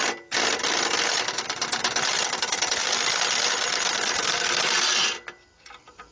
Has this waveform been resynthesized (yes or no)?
no